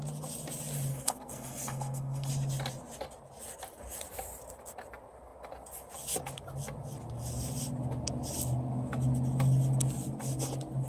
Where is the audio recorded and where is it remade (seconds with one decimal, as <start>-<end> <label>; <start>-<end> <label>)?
0.0-0.9 recorded; 0.9-2.3 remade; 2.3-10.9 recorded